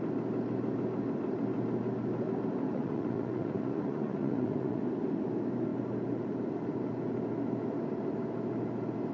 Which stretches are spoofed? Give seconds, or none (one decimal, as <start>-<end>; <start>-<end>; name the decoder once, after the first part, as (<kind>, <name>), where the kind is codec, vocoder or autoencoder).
2.7-4.8 (vocoder, Vocos)